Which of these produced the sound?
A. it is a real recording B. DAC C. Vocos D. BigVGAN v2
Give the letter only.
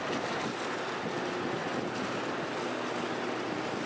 A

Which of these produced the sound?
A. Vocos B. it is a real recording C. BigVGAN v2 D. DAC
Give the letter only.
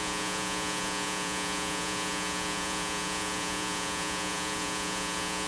A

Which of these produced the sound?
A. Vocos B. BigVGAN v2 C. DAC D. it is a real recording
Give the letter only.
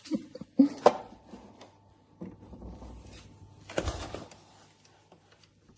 D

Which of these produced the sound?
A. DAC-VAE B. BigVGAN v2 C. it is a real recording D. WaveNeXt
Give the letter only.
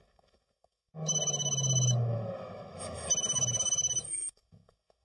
A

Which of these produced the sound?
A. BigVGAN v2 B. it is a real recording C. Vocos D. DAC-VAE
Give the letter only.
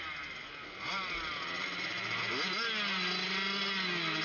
B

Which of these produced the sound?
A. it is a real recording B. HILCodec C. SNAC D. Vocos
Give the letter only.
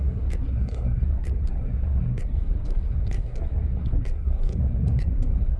C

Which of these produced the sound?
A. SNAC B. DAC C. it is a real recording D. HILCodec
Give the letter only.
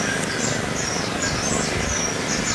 C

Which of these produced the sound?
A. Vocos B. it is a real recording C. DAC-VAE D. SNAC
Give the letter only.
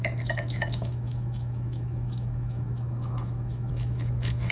C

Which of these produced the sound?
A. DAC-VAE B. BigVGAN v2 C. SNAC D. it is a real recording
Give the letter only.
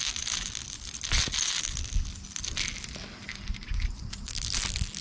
D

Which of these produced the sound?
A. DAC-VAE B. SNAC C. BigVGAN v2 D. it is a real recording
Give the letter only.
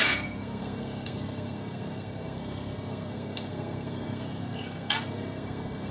B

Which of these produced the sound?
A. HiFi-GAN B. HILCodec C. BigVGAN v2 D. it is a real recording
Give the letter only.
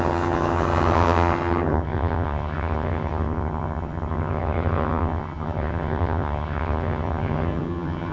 A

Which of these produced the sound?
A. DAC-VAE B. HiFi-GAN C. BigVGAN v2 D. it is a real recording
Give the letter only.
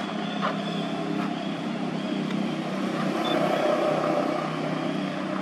D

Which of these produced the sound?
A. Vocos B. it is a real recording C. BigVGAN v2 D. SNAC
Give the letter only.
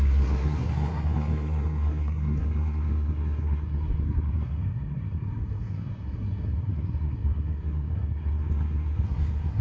D